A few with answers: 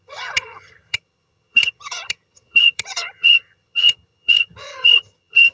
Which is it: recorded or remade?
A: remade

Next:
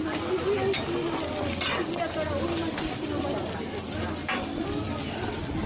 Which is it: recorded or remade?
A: recorded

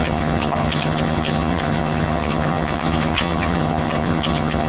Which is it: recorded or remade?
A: remade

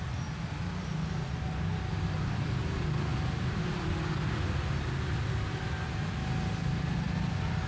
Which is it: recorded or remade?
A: recorded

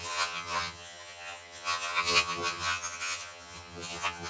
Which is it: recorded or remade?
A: remade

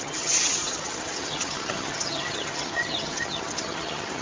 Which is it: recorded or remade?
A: remade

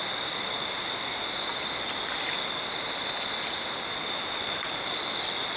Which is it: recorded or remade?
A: recorded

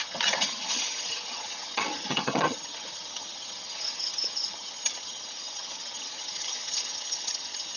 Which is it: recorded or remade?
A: remade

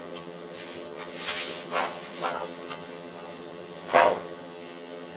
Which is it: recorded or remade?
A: remade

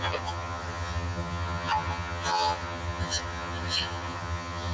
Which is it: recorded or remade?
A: remade